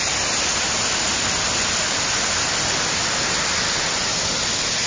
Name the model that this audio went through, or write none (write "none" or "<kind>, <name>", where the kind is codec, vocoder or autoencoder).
none